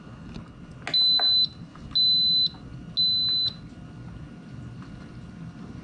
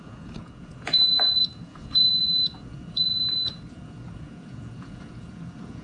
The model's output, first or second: second